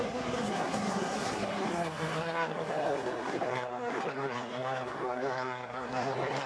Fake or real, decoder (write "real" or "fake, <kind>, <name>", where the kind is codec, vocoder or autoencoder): fake, codec, SNAC